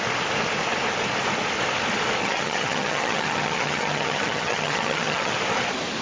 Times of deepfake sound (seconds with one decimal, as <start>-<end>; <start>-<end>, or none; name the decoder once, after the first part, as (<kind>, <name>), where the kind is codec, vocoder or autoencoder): 2.2-5.3 (vocoder, HiFi-GAN)

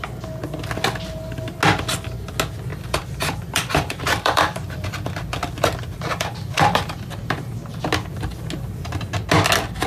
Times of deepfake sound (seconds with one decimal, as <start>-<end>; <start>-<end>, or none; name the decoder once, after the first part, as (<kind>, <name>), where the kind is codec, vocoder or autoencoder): 2.7-7.8 (vocoder, BigVGAN v2)

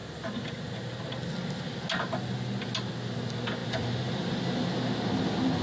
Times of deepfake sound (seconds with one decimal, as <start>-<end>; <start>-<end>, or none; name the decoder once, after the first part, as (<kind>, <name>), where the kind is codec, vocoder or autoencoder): 3.6-4.4 (vocoder, BigVGAN v2)